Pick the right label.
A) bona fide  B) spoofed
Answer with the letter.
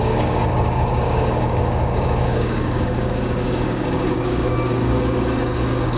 B